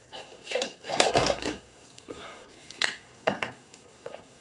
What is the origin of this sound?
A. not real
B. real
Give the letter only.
A